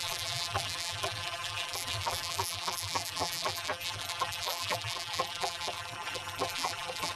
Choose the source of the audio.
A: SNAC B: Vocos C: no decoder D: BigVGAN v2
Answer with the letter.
D